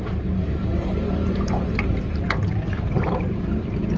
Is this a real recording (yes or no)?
no